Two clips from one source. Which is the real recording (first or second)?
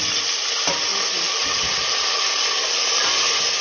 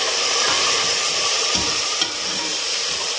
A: first